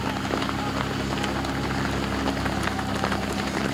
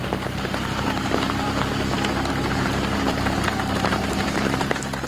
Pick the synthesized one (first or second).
second